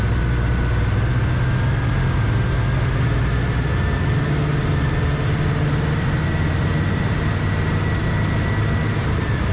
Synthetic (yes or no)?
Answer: no